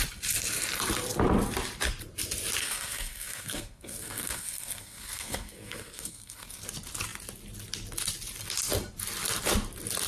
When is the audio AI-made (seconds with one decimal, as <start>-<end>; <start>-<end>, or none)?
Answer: 2.6-6.6